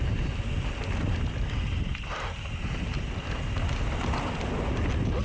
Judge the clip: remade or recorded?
recorded